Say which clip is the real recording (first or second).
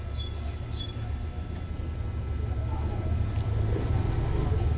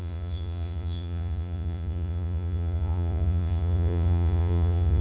first